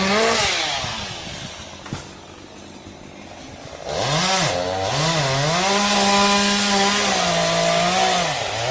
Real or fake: real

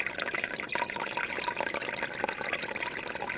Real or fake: real